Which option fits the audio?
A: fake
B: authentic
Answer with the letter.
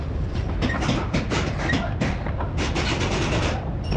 B